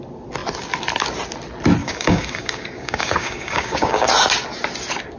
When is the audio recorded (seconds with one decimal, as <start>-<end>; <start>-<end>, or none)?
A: 0.0-1.8; 4.1-5.2

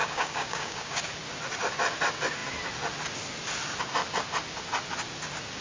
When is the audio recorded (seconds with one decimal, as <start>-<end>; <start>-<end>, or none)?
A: 1.0-5.6